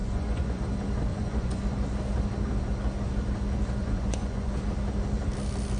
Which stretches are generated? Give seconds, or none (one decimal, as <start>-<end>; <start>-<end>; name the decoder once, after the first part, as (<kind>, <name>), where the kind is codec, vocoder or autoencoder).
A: 0.0-0.6 (vocoder, Vocos); 1.1-1.6; 3.8-4.5